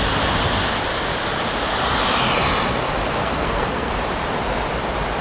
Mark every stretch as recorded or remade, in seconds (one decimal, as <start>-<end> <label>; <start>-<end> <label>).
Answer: 0.0-3.2 recorded; 3.2-3.9 remade; 3.9-5.2 recorded